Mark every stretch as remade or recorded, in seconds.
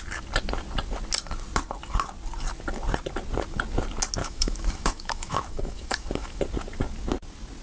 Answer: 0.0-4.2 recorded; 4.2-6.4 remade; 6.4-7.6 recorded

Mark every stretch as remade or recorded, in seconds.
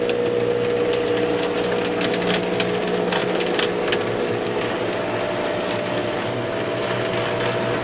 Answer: 0.0-7.8 recorded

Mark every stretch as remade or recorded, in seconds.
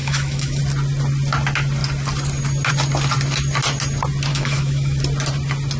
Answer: 0.0-0.6 remade; 0.6-4.3 recorded; 4.3-5.0 remade; 5.0-5.8 recorded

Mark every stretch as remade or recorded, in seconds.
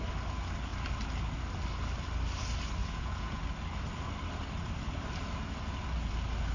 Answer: 0.0-2.8 recorded; 2.8-3.4 remade; 3.4-6.5 recorded